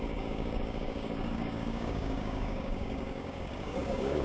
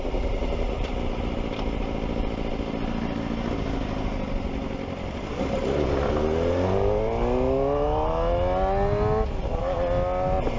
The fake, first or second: first